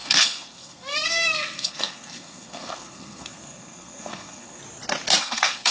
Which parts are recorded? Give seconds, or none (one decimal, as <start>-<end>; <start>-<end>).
4.6-5.2

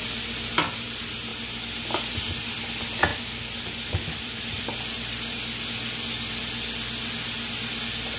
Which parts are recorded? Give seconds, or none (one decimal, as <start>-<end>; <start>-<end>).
0.0-3.1; 4.8-8.2

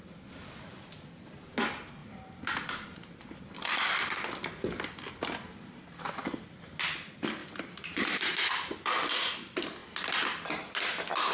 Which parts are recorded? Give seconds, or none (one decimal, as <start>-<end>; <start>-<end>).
0.0-2.0; 3.4-7.4; 8.4-11.3

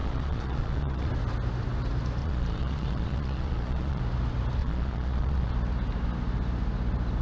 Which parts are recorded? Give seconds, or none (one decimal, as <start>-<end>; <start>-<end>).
1.1-2.2; 4.0-4.6; 5.5-7.2

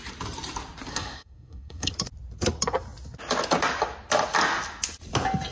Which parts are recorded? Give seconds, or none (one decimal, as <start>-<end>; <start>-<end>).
0.0-0.9; 1.9-5.5

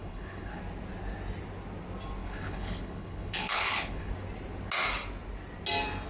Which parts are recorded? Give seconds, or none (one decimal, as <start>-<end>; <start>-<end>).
0.6-2.2; 4.1-6.1